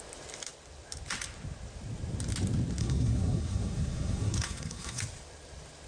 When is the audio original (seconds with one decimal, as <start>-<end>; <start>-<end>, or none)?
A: 0.0-2.8; 5.0-5.9